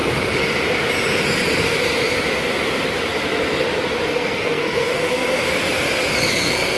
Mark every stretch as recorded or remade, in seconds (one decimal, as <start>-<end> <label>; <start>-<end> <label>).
0.0-4.1 recorded; 4.1-5.5 remade; 5.5-6.3 recorded; 6.3-6.8 remade